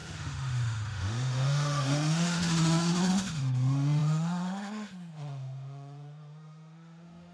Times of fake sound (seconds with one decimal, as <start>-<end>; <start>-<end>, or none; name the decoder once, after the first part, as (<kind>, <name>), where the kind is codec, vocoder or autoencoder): 0.0-7.3 (autoencoder, DAC-VAE)